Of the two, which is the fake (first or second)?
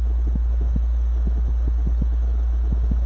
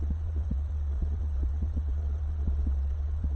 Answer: second